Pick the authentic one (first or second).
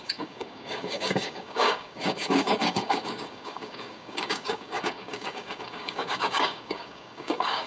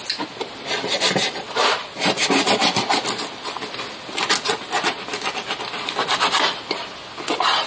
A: second